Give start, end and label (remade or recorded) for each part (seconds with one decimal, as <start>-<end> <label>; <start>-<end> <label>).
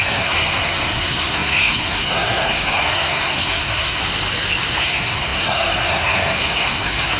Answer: 0.0-4.0 remade; 4.0-4.8 recorded; 4.8-7.2 remade